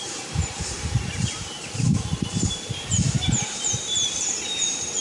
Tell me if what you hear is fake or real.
fake